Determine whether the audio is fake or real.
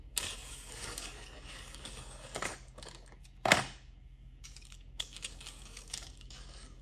fake